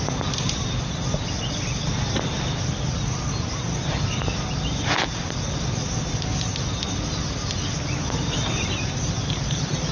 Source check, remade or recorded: recorded